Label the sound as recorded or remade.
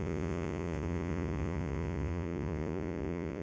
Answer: remade